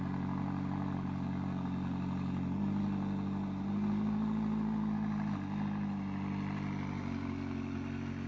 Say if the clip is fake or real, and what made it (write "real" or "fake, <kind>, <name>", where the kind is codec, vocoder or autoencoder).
real